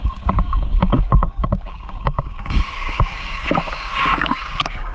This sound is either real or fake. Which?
fake